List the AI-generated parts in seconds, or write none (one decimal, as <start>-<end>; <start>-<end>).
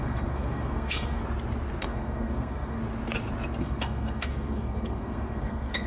0.0-1.2; 1.8-2.8; 3.6-5.9